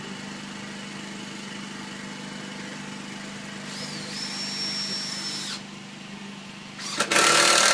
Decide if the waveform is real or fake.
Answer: real